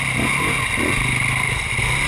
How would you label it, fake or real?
real